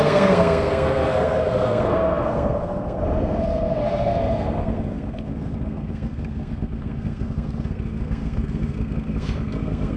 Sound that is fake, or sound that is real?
fake